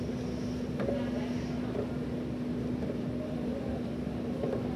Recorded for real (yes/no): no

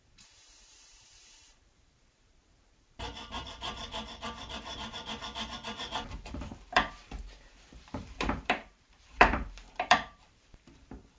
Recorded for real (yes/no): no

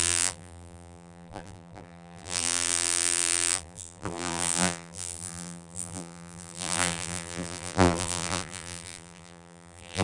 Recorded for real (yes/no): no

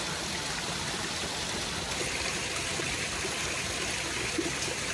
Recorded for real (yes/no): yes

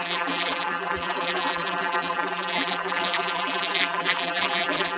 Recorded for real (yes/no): no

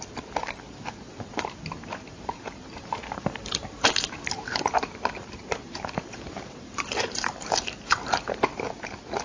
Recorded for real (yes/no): no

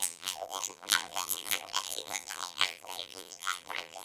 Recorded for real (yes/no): no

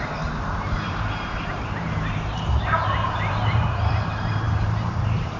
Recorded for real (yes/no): no